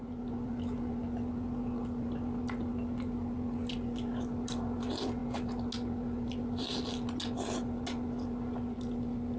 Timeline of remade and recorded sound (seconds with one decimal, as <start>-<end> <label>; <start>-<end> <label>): 0.0-9.4 recorded